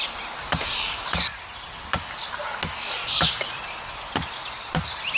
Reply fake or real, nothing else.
real